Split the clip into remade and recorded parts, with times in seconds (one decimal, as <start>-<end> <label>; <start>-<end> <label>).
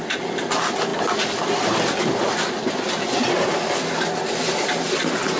0.0-5.4 recorded